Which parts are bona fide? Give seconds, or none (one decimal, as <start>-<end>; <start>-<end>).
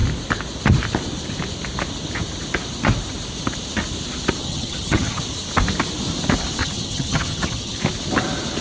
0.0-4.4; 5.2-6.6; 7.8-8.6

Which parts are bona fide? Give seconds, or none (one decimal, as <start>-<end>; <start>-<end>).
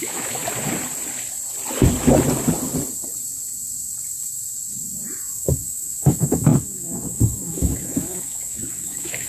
0.4-5.2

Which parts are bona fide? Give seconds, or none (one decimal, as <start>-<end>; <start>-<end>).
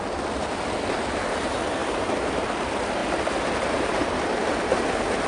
0.0-1.8; 2.5-5.3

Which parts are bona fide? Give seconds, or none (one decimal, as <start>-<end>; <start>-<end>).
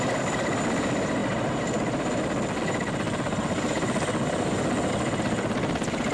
0.0-6.1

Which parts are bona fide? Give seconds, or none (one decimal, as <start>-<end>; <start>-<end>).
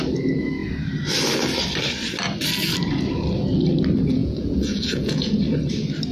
0.0-4.2; 5.4-6.1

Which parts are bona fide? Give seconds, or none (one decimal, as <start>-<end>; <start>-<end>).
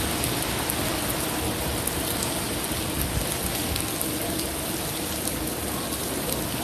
0.0-6.6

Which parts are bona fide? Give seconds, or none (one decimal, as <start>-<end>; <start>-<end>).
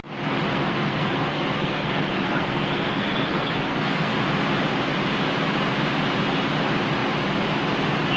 0.0-0.5; 4.1-8.2